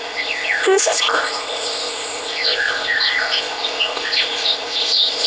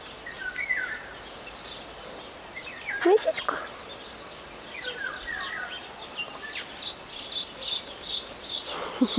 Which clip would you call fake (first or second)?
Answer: first